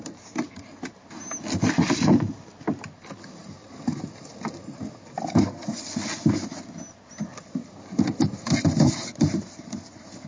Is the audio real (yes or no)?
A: yes